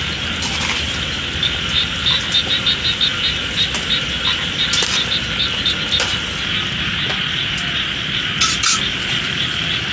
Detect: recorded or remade recorded